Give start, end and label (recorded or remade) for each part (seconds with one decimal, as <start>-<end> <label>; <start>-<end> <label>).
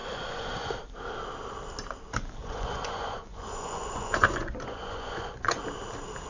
0.0-0.7 remade; 0.7-2.4 recorded; 2.4-5.6 remade; 5.6-6.3 recorded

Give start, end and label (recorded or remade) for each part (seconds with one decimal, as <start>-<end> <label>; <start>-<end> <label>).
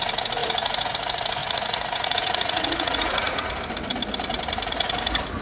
0.0-0.4 recorded; 0.4-0.9 remade; 0.9-1.4 recorded; 1.4-3.5 remade; 3.5-5.4 recorded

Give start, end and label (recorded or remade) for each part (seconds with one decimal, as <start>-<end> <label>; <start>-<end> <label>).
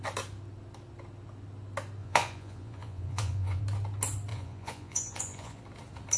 0.0-2.0 recorded; 2.0-3.6 remade; 3.6-4.3 recorded; 4.3-5.6 remade; 5.6-6.2 recorded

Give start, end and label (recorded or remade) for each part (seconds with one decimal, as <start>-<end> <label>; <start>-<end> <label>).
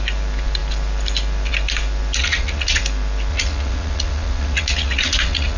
0.0-2.2 recorded; 2.2-2.8 remade; 2.8-3.3 recorded; 3.3-5.6 remade